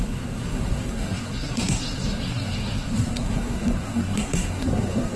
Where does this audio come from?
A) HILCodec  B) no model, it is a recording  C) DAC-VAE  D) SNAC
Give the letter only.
D